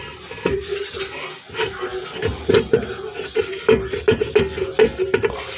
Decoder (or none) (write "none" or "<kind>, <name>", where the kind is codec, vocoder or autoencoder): none